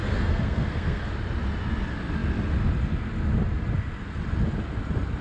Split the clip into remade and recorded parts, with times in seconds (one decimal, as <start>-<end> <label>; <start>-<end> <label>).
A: 0.0-1.0 remade; 1.0-5.2 recorded